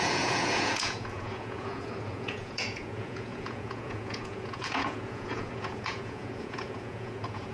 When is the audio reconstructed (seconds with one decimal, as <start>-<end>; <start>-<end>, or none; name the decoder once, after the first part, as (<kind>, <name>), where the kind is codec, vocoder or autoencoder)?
0.0-7.5 (vocoder, Vocos)